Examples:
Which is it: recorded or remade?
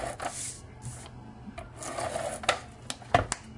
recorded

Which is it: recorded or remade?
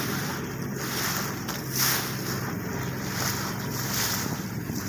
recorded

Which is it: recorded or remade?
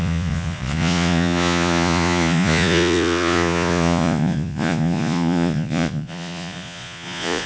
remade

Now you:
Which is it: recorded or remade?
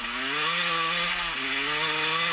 recorded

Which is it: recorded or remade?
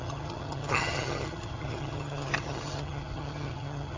remade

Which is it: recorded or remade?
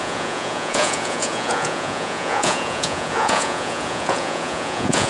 remade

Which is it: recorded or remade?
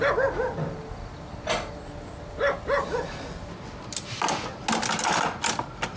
recorded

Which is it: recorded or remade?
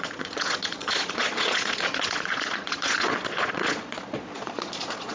remade